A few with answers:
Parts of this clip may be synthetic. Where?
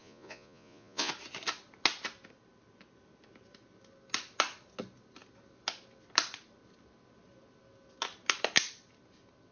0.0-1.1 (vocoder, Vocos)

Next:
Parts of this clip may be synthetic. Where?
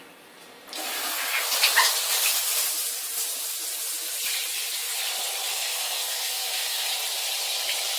5.5-6.9 (codec, SNAC)